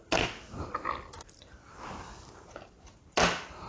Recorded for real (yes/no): yes